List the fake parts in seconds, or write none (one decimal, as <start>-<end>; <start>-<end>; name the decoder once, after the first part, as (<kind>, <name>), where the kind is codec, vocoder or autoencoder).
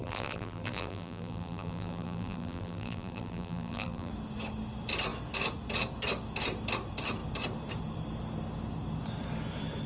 0.0-4.1 (vocoder, BigVGAN v2)